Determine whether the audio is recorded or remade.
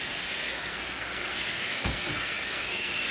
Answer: remade